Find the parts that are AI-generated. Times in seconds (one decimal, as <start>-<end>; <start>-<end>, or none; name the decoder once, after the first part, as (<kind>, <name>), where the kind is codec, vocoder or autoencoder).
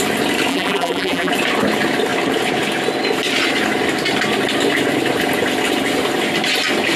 0.5-1.3 (vocoder, BigVGAN v2)